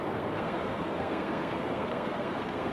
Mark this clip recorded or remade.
remade